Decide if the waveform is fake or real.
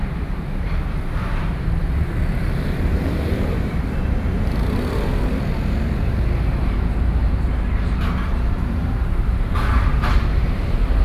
fake